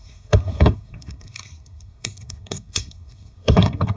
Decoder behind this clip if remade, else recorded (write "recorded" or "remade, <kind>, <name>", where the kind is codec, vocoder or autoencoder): remade, codec, SNAC